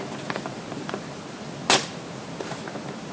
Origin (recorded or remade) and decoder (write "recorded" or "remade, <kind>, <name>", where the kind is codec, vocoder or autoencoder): recorded